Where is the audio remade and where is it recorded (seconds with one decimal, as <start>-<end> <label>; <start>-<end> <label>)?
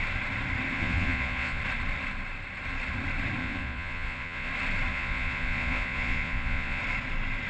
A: 0.0-0.7 recorded; 0.7-1.6 remade; 1.6-3.4 recorded; 3.4-4.5 remade; 4.5-4.9 recorded; 4.9-6.8 remade; 6.8-7.5 recorded